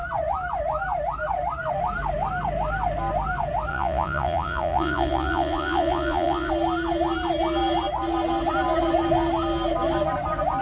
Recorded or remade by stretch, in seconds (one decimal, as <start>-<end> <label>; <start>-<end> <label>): 0.0-3.7 recorded; 3.7-6.5 remade; 6.5-10.6 recorded

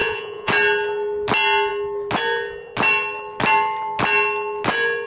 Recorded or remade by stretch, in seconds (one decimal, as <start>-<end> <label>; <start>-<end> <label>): 0.0-0.5 remade; 0.5-5.1 recorded

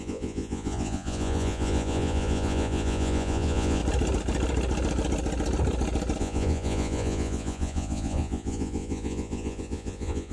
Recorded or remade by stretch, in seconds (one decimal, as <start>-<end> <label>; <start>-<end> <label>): 0.0-3.8 remade; 3.8-6.2 recorded; 6.2-10.3 remade

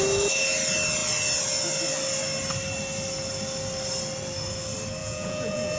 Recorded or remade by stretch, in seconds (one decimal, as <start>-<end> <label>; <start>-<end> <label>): 0.0-5.0 recorded; 5.0-5.8 remade

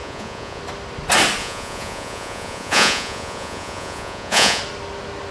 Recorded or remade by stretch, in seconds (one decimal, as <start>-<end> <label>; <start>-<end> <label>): 0.0-0.6 remade; 0.6-1.4 recorded; 1.4-4.6 remade; 4.6-5.3 recorded

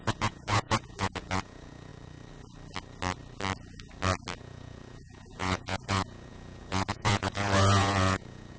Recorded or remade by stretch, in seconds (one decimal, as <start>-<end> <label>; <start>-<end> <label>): 0.0-1.9 remade; 1.9-4.4 recorded; 4.4-8.6 remade

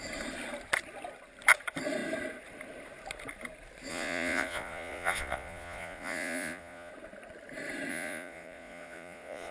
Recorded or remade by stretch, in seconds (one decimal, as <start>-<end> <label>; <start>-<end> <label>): 0.0-3.9 recorded; 3.9-6.9 remade; 6.9-7.9 recorded; 7.9-9.5 remade

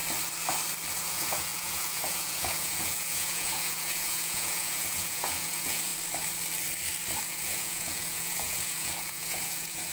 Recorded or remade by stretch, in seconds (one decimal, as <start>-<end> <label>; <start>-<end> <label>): 0.0-0.9 recorded; 0.9-5.9 remade; 5.9-7.2 recorded; 7.2-9.9 remade